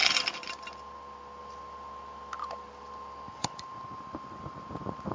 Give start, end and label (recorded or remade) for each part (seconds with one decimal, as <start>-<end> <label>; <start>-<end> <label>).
0.0-5.1 recorded